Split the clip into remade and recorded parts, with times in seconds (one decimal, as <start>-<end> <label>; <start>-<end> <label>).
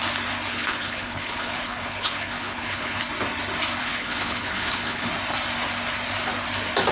0.0-0.5 recorded; 0.5-3.0 remade; 3.0-3.8 recorded; 3.8-5.1 remade; 5.1-6.9 recorded